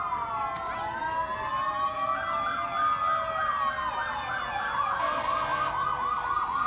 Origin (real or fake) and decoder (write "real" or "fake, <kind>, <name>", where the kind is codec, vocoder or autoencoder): real